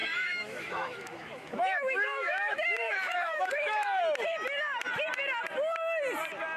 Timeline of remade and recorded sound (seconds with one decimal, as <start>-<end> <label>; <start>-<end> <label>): 0.0-4.0 remade; 4.0-6.6 recorded